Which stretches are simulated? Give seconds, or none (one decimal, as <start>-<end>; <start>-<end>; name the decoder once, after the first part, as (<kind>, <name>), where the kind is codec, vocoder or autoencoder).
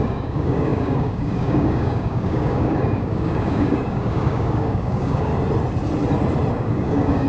0.0-5.3 (codec, DAC); 6.5-7.3